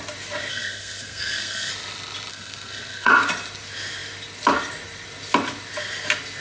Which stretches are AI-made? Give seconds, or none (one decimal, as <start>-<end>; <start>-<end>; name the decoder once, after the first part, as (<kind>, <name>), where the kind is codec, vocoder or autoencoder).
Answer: 0.5-1.7 (codec, SNAC); 2.3-3.1